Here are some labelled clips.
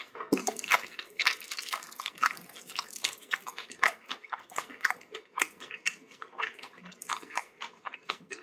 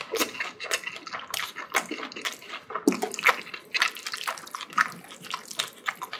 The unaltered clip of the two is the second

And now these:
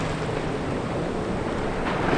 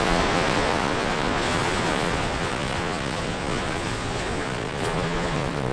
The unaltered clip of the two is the first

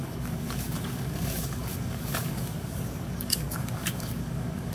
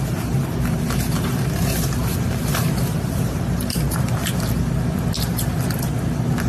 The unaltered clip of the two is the second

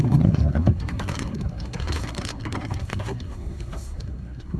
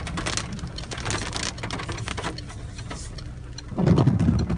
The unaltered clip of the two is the second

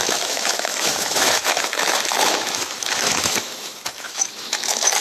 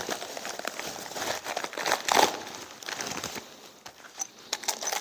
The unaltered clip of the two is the second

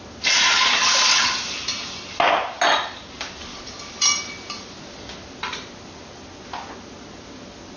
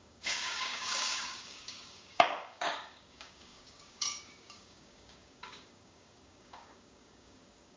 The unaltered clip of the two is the first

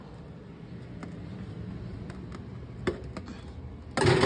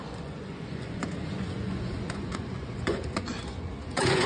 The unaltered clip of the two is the first